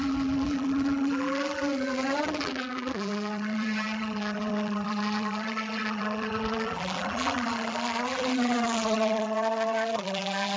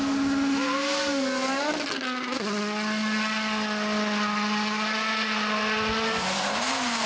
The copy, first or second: first